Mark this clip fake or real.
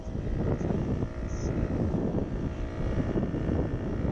fake